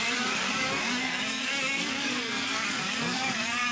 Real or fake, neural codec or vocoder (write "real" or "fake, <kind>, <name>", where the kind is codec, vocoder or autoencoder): fake, codec, DAC